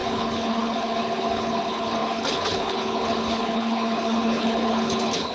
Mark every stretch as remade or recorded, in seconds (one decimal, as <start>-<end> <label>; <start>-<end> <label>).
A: 0.0-5.3 remade